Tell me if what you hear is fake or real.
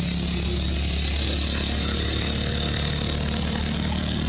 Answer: real